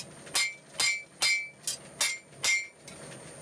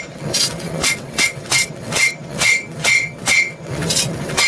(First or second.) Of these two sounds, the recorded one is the first